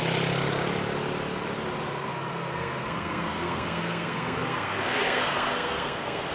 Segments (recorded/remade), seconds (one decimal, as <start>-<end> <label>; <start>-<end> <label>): 0.0-2.1 recorded; 2.1-6.3 remade